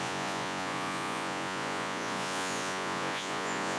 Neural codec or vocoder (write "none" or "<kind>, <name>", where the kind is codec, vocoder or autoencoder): vocoder, Vocos